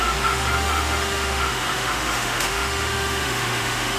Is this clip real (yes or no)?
no